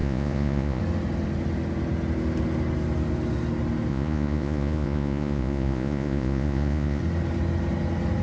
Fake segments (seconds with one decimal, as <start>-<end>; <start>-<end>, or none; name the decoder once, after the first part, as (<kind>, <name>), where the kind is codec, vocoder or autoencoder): 0.0-0.8 (vocoder, Vocos); 3.9-7.0